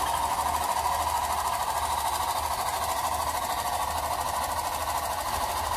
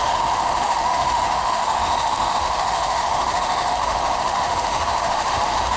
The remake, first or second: second